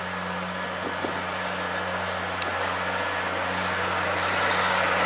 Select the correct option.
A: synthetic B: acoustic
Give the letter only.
B